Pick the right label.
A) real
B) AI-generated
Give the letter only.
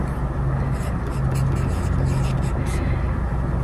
A